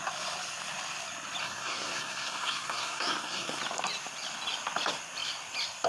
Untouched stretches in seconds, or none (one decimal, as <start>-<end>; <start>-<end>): 0.0-1.4; 3.6-5.9